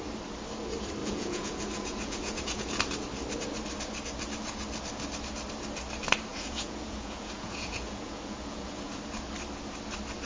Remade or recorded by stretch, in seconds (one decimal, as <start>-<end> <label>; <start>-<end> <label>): 0.0-1.0 recorded; 1.0-2.8 remade; 2.8-6.3 recorded; 6.3-9.0 remade; 9.0-10.3 recorded